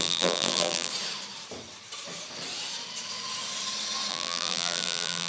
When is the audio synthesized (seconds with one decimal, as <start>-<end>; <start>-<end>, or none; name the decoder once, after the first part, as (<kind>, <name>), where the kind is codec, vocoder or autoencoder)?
0.0-0.9 (vocoder, BigVGAN v2); 4.1-5.3